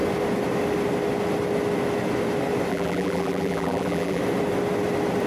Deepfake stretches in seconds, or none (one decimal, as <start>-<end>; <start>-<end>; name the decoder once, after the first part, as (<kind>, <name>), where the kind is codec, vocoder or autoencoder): 2.7-4.2 (vocoder, BigVGAN v2)